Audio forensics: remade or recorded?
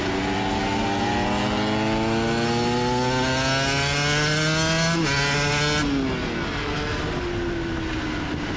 recorded